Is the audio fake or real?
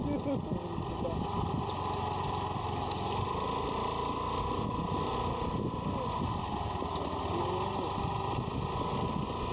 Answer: real